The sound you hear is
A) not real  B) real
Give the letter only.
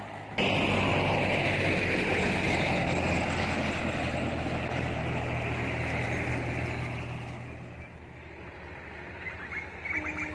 B